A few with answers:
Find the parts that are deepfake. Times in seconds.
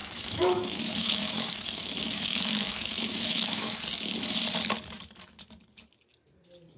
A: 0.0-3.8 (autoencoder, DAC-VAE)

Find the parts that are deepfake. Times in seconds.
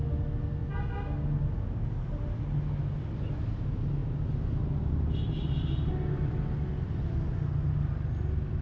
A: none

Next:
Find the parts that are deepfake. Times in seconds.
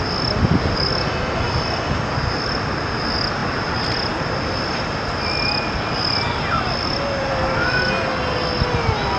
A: none